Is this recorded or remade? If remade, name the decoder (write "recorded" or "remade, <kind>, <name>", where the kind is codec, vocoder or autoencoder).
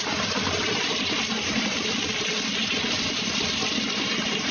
recorded